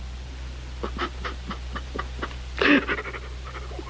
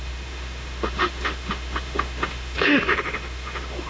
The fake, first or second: second